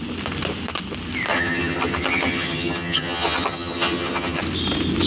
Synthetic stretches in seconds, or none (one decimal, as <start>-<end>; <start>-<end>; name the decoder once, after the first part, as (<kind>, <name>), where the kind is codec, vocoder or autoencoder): 1.3-4.4 (vocoder, HiFi-GAN)

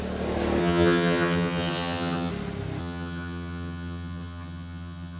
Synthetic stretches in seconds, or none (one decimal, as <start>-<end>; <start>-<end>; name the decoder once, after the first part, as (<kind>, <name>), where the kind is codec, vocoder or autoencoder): 0.6-2.3 (vocoder, HiFi-GAN); 2.8-5.2

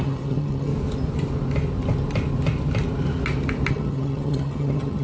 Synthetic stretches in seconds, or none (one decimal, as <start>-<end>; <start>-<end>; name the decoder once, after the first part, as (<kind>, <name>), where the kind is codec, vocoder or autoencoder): 0.0-0.7 (vocoder, HiFi-GAN); 3.7-5.0

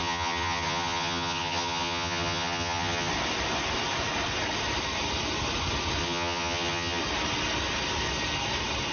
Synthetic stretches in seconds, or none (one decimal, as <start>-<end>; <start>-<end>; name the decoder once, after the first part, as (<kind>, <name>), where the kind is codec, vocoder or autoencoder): 0.0-3.1 (vocoder, HiFi-GAN); 6.0-7.0

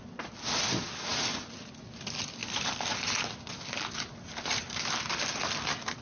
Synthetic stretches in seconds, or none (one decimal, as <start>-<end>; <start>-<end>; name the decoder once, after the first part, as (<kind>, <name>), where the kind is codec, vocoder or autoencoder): none

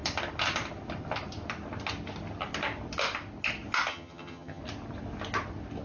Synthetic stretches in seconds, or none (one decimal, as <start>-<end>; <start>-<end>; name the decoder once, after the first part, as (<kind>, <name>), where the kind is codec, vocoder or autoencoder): 3.9-4.6 (vocoder, HiFi-GAN)